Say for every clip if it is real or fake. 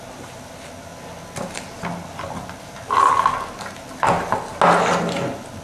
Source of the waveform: real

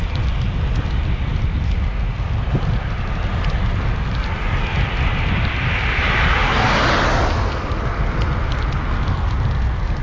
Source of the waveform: real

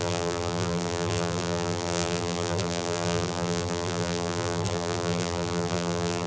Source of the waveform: fake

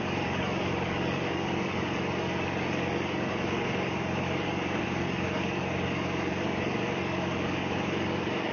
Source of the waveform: fake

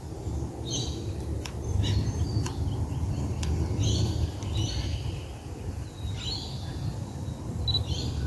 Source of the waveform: real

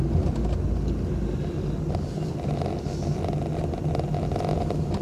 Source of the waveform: real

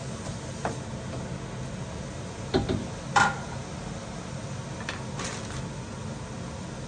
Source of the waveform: real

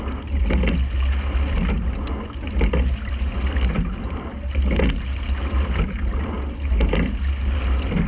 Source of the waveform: real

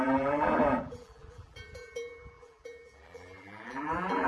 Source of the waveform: fake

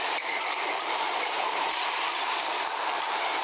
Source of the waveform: fake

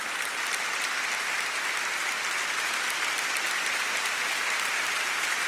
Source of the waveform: real